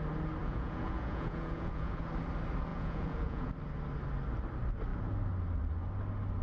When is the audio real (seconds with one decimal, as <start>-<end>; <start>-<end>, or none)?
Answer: 0.0-0.4; 2.0-2.7; 3.5-6.4